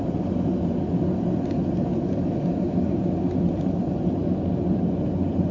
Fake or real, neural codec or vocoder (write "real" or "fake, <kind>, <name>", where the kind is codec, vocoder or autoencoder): real